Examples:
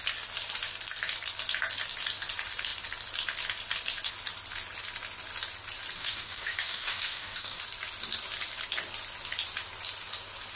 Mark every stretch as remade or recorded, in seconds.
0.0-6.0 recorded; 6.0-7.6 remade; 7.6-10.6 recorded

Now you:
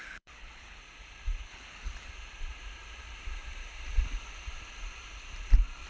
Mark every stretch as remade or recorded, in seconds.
0.0-0.8 remade; 0.8-1.5 recorded; 1.5-2.1 remade; 2.1-5.9 recorded

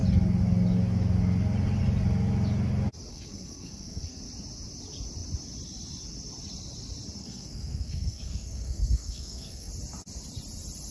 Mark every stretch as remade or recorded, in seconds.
0.0-3.1 recorded; 3.1-4.2 remade; 4.2-7.2 recorded; 7.2-9.7 remade; 9.7-10.9 recorded